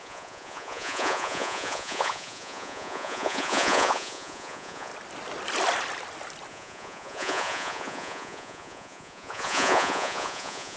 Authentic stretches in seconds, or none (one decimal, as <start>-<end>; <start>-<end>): 4.9-6.5